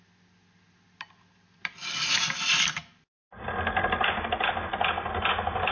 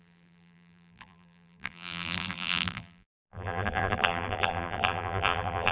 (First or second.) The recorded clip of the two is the first